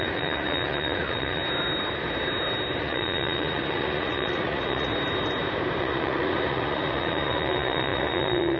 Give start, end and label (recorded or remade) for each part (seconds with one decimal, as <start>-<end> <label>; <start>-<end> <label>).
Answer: 0.0-1.4 remade; 1.4-2.8 recorded; 2.8-4.9 remade; 4.9-5.8 recorded; 5.8-8.6 remade